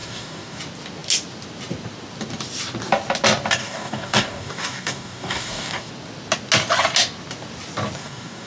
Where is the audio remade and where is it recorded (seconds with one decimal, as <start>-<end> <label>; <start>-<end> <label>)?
0.0-0.6 remade; 0.6-3.6 recorded; 3.6-5.9 remade; 5.9-8.0 recorded; 8.0-8.5 remade